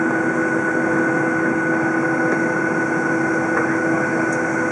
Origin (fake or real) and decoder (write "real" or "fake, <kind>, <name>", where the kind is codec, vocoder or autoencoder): real